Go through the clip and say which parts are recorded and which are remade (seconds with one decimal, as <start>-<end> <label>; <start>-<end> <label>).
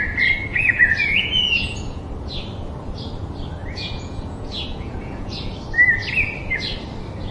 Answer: 0.0-0.5 recorded; 0.5-2.1 remade; 2.1-3.6 recorded; 3.6-5.5 remade; 5.5-7.3 recorded